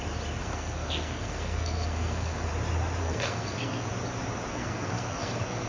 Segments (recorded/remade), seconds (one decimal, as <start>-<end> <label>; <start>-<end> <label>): 0.0-0.4 recorded; 0.4-2.5 remade; 2.5-3.0 recorded; 3.0-3.9 remade; 3.9-4.5 recorded; 4.5-5.7 remade